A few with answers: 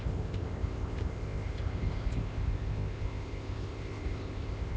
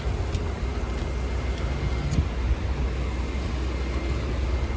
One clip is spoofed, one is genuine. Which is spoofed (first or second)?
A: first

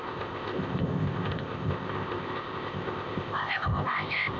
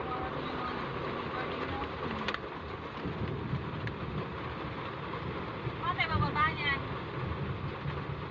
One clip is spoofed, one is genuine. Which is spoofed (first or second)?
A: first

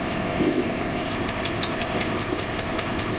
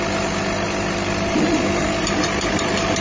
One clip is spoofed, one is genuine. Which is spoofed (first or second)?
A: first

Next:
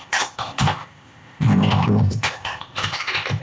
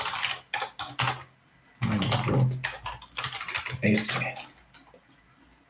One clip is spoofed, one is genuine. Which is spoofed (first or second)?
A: first